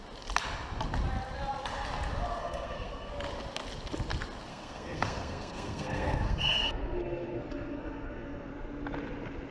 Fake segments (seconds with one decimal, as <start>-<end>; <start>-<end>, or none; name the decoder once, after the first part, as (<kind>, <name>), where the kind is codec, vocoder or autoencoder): 2.4-3.1 (codec, SNAC); 4.5-8.5